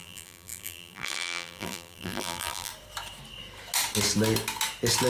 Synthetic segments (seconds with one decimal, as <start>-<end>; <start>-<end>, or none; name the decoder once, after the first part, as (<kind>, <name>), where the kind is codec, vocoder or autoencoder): 0.0-2.7 (vocoder, BigVGAN v2)